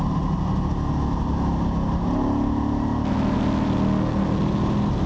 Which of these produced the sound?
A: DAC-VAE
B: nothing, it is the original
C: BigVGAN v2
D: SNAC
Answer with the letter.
B